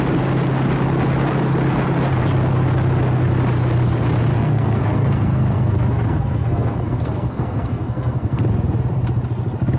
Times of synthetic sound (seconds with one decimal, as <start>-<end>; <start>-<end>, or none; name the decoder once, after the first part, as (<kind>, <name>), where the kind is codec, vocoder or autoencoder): 4.3-8.4 (codec, SNAC)